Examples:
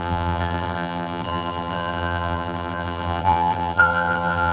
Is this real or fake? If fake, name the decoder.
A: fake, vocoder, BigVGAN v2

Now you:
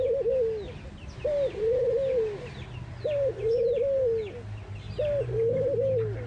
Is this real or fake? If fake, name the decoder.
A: real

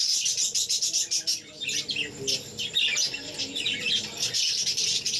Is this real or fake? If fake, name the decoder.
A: real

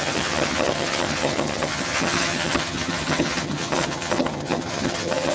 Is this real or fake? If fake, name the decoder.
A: fake, vocoder, HiFi-GAN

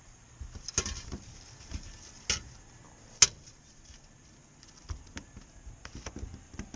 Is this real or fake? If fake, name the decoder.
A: real